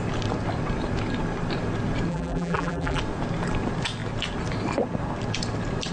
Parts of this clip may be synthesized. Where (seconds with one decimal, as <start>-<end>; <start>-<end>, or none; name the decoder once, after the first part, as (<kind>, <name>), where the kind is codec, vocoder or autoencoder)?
2.1-3.0 (vocoder, BigVGAN v2)